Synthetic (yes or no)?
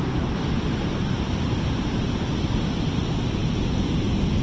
no